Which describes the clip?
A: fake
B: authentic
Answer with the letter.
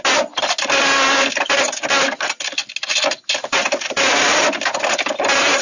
B